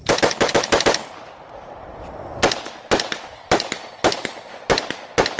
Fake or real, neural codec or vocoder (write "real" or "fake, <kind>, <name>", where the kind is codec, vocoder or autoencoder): real